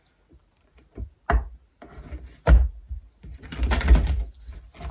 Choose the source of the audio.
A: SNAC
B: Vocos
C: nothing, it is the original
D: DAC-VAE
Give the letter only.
C